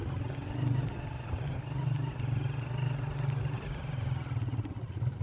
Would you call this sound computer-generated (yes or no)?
no